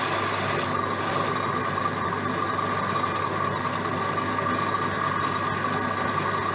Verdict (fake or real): real